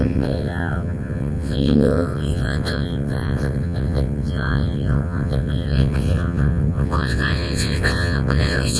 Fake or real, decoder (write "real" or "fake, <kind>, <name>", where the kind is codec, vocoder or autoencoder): fake, vocoder, WaveNeXt